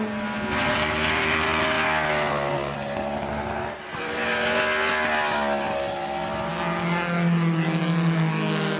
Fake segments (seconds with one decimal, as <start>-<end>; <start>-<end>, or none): none